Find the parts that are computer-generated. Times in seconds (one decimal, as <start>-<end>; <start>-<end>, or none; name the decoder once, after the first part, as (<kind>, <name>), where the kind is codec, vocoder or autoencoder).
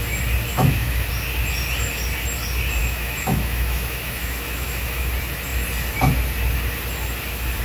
0.5-1.1 (autoencoder, DAC-VAE); 2.8-5.1